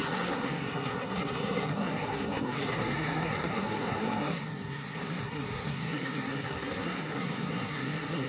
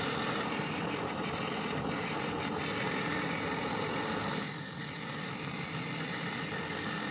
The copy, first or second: first